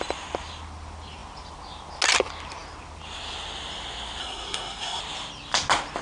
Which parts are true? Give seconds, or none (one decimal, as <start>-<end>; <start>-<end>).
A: 0.0-4.2; 5.0-6.0